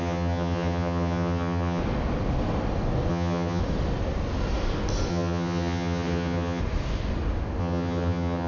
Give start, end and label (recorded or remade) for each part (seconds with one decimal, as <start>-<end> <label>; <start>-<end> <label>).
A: 0.0-1.8 remade; 1.8-3.1 recorded; 3.1-3.6 remade; 3.6-5.1 recorded; 5.1-6.6 remade; 6.6-7.6 recorded; 7.6-8.5 remade

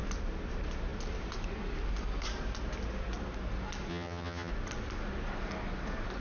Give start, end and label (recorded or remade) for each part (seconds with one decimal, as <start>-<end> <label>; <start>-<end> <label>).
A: 0.0-3.9 recorded; 3.9-4.5 remade; 4.5-6.2 recorded

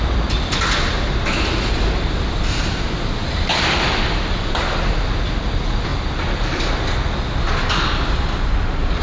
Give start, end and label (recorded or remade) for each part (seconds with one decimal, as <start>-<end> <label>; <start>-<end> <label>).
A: 0.0-9.0 recorded

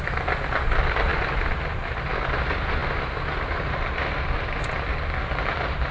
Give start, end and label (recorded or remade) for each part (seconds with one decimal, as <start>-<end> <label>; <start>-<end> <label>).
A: 0.0-5.9 recorded

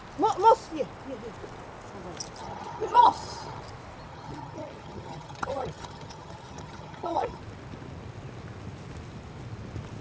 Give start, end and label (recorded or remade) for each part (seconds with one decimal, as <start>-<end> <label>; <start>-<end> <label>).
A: 0.0-2.4 recorded; 2.4-3.6 remade; 3.6-4.1 recorded; 4.1-7.4 remade; 7.4-10.0 recorded

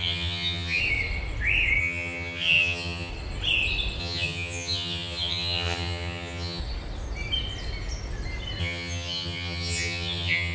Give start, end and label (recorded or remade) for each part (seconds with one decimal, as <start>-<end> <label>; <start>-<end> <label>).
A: 0.0-0.8 remade; 0.8-1.8 recorded; 1.8-3.1 remade; 3.1-4.0 recorded; 4.0-6.6 remade; 6.6-8.6 recorded; 8.6-10.5 remade